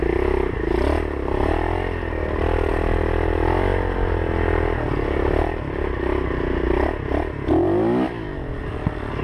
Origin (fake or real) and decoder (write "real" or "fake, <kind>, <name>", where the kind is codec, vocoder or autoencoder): real